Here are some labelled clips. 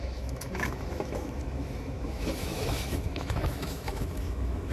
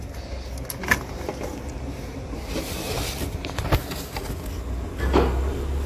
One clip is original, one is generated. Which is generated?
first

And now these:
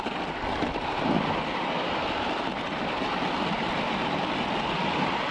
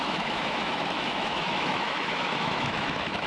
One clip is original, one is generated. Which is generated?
second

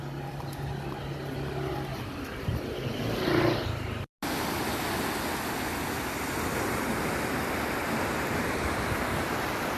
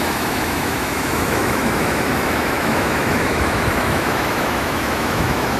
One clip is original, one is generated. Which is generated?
second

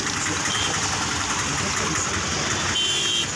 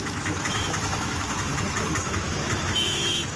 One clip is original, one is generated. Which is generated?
second